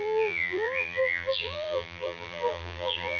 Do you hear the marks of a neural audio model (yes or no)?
yes